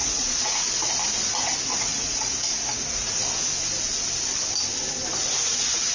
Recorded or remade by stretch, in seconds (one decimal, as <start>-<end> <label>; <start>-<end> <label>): 0.0-0.9 remade; 0.9-1.7 recorded; 1.7-3.2 remade; 3.2-5.9 recorded